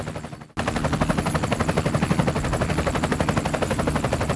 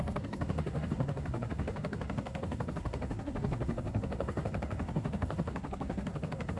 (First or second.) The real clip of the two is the first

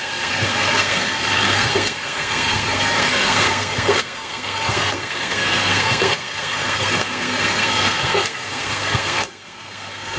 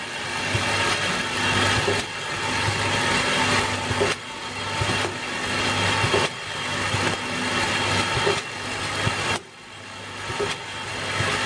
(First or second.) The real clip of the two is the second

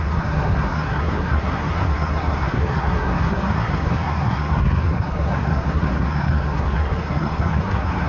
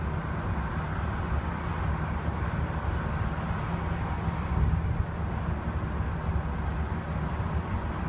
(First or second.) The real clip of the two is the second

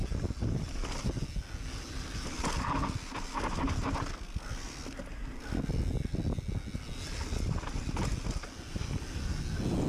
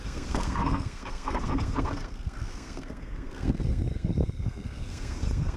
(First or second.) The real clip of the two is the first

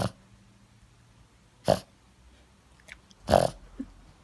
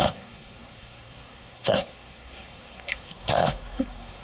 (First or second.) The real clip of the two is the first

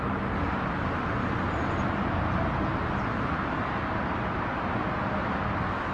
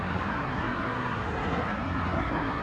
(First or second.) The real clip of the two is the first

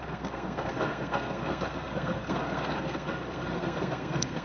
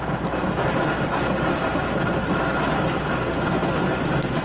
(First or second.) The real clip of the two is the second